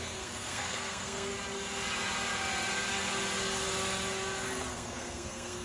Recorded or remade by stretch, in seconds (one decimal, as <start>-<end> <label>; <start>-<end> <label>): 0.0-1.3 remade; 1.3-4.7 recorded; 4.7-5.6 remade